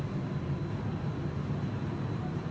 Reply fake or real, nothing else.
real